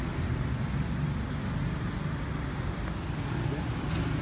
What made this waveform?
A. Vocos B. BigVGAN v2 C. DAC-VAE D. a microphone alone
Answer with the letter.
D